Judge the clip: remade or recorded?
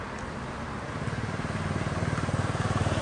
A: recorded